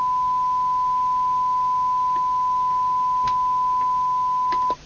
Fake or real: real